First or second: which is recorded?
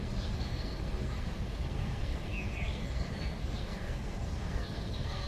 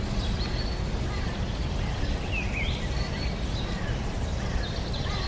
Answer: second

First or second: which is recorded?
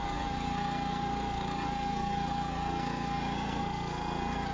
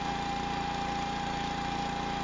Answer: second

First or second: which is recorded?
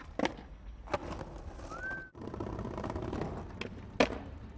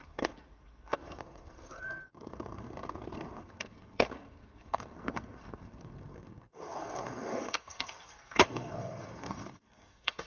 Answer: first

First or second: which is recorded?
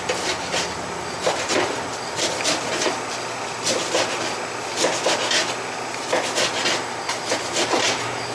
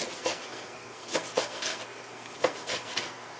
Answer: first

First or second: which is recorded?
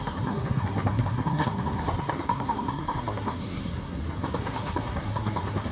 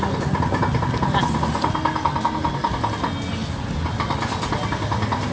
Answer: second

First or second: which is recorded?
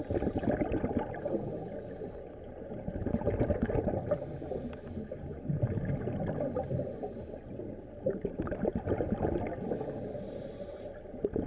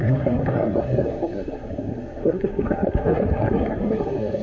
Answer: first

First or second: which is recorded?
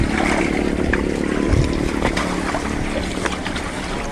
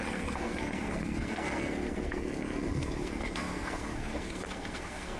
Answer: first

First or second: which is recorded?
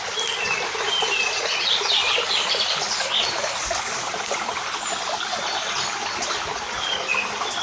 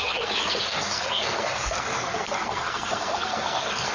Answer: first